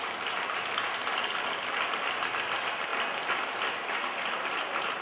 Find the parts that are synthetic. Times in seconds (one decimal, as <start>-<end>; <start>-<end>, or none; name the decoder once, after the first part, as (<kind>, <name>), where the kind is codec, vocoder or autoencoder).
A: none